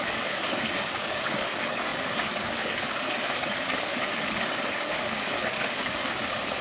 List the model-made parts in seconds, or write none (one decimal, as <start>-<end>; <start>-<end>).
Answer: 0.0-6.6